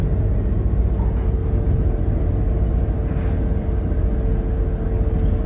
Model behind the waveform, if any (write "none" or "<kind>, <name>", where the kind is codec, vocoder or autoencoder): none